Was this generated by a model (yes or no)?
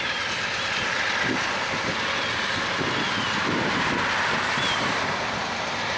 no